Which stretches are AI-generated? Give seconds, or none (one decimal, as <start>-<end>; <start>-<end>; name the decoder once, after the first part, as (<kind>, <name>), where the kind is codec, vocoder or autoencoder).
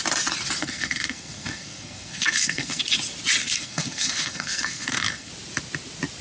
0.6-2.8 (codec, SNAC); 3.4-5.3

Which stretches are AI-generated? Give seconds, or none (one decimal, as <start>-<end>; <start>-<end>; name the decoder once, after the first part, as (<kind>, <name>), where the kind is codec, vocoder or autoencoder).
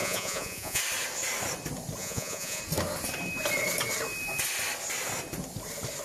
0.0-0.8 (vocoder, Vocos); 2.0-2.6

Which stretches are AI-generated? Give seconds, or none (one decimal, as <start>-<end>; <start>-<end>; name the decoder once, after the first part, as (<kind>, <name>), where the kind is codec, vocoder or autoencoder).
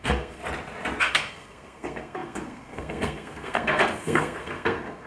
0.0-0.4 (codec, SNAC); 1.0-5.1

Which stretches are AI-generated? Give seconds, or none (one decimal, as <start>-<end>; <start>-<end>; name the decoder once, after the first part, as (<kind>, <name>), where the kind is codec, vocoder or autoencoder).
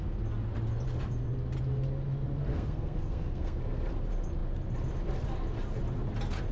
2.5-3.6 (codec, SNAC)